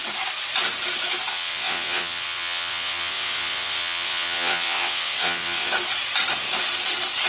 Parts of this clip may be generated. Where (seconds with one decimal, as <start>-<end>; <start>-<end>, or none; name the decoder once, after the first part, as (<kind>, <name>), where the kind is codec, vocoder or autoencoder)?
1.3-5.7 (vocoder, WaveNeXt)